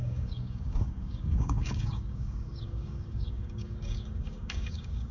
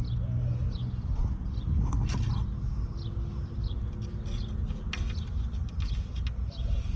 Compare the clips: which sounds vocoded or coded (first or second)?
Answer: first